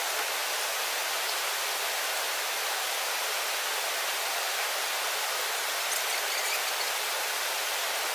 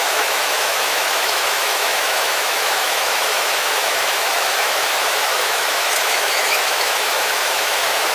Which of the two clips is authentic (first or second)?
first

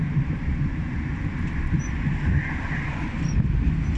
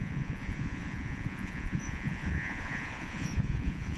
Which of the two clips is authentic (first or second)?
first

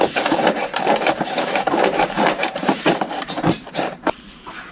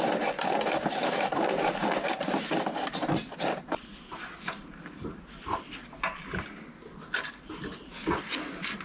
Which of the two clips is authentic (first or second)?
second